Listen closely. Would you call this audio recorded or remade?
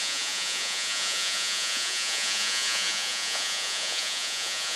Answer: remade